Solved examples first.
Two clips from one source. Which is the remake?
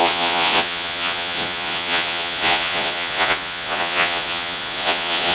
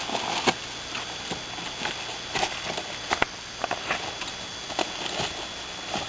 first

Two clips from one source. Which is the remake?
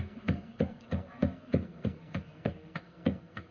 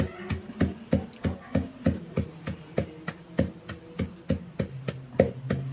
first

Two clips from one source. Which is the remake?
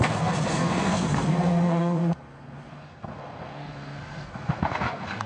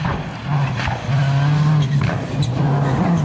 first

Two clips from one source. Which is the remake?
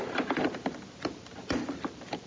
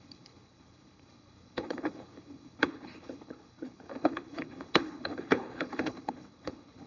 second